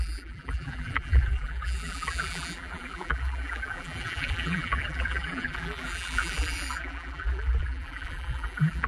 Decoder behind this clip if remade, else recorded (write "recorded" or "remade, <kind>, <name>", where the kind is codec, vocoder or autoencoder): remade, vocoder, BigVGAN v2